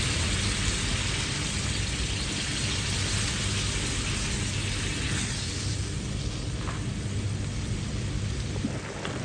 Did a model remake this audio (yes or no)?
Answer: no